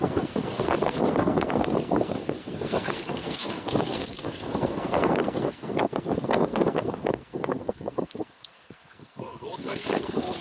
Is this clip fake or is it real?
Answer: fake